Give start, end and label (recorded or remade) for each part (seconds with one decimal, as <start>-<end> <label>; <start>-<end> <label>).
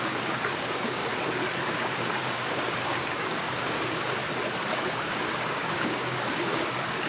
0.0-1.0 remade; 1.0-1.7 recorded; 1.7-4.2 remade; 4.2-4.7 recorded; 4.7-7.1 remade